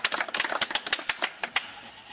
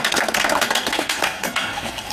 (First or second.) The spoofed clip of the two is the second